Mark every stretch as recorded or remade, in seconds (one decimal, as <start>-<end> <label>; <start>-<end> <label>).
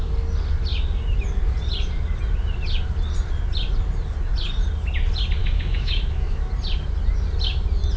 0.0-5.4 recorded; 5.4-6.5 remade; 6.5-8.0 recorded